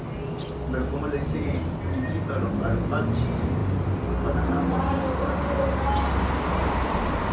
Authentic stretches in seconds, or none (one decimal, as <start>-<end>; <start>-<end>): 0.0-7.3